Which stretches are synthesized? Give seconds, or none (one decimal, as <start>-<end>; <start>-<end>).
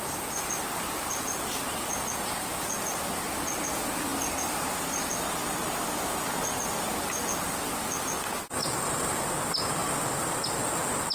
4.1-4.7; 8.6-9.3; 9.8-10.5